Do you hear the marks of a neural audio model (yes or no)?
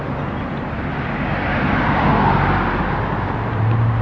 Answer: no